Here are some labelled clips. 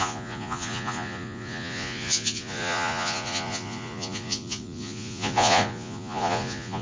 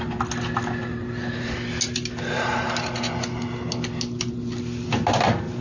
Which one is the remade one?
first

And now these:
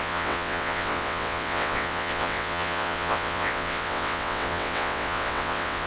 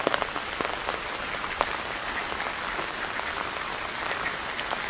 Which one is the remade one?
first